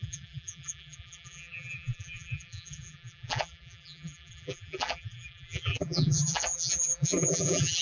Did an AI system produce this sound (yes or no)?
yes